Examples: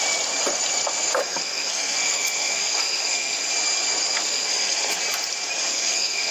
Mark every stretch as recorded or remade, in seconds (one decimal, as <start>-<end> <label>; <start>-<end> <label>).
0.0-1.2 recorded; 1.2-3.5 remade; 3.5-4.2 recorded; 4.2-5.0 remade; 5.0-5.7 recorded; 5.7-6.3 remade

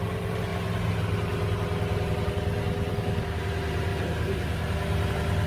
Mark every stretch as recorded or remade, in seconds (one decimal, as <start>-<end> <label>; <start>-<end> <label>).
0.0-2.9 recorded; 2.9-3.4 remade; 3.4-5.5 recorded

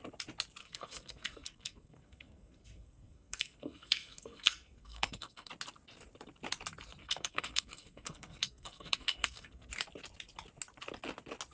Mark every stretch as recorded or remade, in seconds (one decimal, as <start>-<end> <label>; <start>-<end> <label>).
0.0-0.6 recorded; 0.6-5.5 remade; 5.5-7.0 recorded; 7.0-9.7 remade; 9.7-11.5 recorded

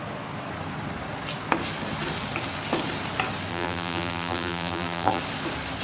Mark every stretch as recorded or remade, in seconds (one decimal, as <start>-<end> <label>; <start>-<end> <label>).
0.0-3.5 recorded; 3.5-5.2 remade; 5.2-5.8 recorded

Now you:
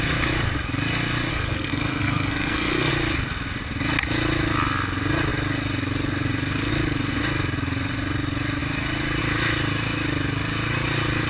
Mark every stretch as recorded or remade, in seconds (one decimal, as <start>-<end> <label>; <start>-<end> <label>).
0.0-1.3 recorded; 1.3-2.9 remade; 2.9-11.3 recorded

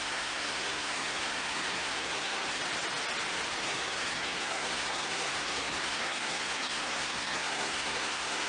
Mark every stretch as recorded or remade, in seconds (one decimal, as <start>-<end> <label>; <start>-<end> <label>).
0.0-2.6 remade; 2.6-3.6 recorded; 3.6-8.5 remade

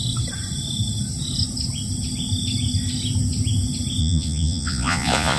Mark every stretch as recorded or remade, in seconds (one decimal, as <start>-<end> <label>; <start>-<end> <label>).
0.0-4.0 recorded; 4.0-5.4 remade

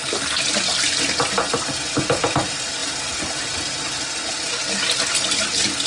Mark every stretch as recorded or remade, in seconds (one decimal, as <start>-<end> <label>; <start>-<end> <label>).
0.0-5.9 recorded